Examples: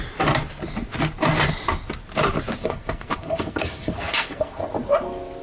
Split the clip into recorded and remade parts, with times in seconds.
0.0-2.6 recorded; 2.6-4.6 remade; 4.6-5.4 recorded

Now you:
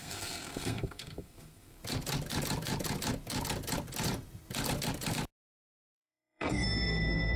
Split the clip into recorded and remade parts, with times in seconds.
0.0-1.8 remade; 1.8-5.6 recorded; 5.6-7.4 remade

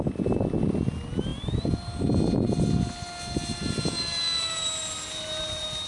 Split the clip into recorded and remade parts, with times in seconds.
0.0-5.9 recorded

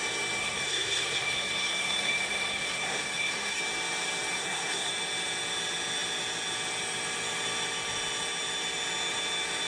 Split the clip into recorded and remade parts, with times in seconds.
0.0-0.4 recorded; 0.4-3.6 remade; 3.6-4.3 recorded; 4.3-4.9 remade; 4.9-9.7 recorded

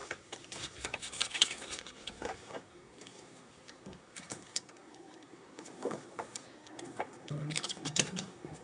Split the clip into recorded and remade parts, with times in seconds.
0.0-8.6 remade

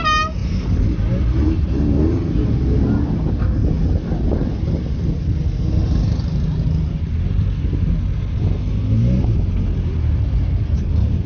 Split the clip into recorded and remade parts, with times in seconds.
0.0-11.3 recorded